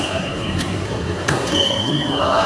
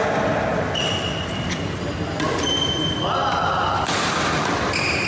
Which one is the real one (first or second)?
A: second